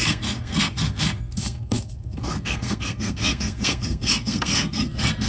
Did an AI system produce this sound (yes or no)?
yes